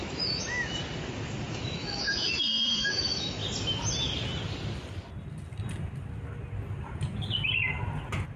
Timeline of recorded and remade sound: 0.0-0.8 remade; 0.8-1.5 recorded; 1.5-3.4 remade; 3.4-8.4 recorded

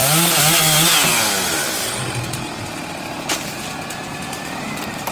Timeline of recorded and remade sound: 0.0-5.1 recorded

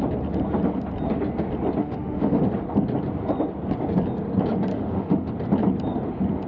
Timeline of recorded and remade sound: 0.0-1.8 recorded; 1.8-2.4 remade; 2.4-4.7 recorded; 4.7-5.3 remade; 5.3-6.5 recorded

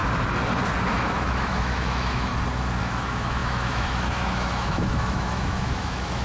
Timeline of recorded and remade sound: 0.0-0.9 recorded; 0.9-2.3 remade; 2.3-2.8 recorded; 2.8-6.2 remade

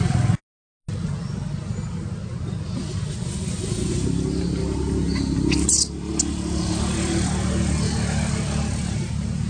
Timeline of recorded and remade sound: 0.0-9.5 recorded

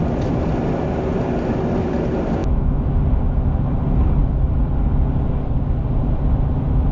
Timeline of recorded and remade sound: 0.0-2.4 recorded; 2.4-2.9 remade; 2.9-6.9 recorded

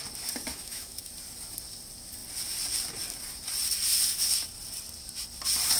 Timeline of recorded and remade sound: 0.0-0.5 recorded; 0.5-1.1 remade; 1.1-5.8 recorded